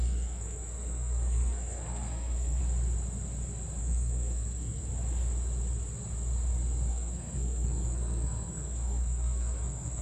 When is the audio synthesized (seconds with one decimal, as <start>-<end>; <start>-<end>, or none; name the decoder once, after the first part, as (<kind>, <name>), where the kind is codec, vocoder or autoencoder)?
0.0-2.6 (codec, SNAC); 3.8-4.9; 6.9-10.0